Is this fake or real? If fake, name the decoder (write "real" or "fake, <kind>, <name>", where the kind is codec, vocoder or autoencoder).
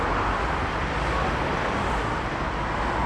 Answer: real